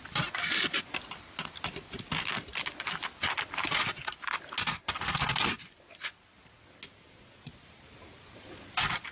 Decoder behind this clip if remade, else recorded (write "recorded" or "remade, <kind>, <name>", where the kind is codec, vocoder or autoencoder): recorded